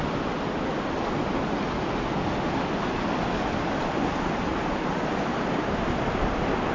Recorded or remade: recorded